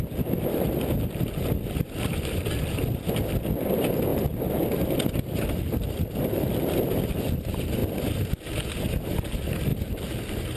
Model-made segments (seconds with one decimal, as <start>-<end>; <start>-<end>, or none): none